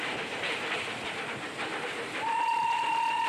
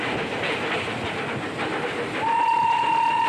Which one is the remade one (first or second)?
first